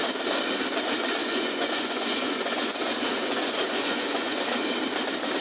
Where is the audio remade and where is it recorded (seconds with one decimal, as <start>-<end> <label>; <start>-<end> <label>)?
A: 0.0-1.2 recorded; 1.2-4.4 remade; 4.4-5.4 recorded